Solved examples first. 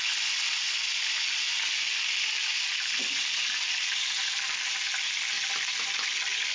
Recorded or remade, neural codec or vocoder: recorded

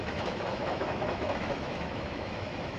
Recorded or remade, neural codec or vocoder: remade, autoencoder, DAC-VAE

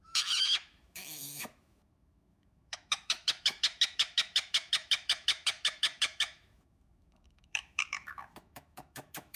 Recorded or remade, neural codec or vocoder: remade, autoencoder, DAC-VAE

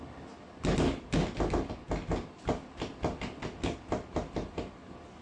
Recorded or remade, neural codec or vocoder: recorded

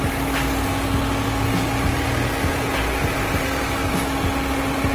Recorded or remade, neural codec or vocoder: recorded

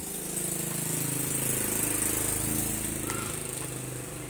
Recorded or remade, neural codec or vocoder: recorded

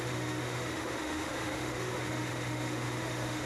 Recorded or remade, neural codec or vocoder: remade, autoencoder, DAC-VAE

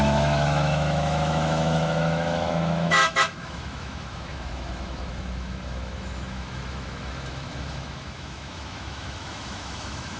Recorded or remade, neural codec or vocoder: remade, autoencoder, DAC-VAE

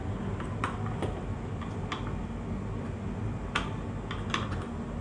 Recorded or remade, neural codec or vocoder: recorded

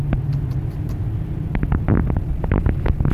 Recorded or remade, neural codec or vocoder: recorded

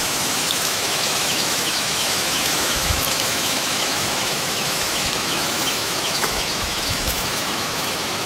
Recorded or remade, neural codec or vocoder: remade, autoencoder, DAC-VAE